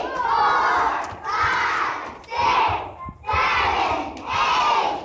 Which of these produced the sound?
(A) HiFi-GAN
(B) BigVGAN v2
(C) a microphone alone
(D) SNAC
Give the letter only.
C